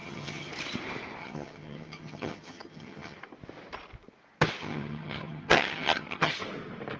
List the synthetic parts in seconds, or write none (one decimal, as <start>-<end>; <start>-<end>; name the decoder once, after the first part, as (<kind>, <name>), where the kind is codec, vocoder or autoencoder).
0.0-0.5 (vocoder, HiFi-GAN); 1.2-3.2; 4.6-6.3